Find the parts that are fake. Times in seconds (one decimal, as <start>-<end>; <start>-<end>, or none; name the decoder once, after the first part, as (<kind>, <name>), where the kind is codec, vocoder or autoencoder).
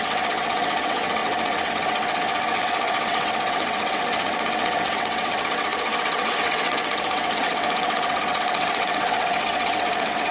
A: 0.0-10.3 (vocoder, WaveNeXt)